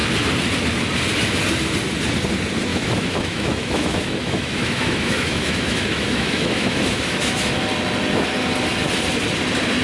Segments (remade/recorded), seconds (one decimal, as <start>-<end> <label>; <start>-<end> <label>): 0.0-2.7 recorded; 2.7-7.6 remade; 7.6-9.8 recorded